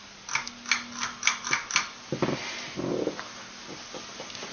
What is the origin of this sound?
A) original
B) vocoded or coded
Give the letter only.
A